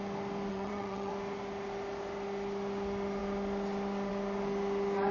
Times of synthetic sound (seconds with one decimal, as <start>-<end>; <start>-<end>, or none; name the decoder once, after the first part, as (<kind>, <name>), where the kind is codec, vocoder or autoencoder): 0.5-1.1 (vocoder, HiFi-GAN)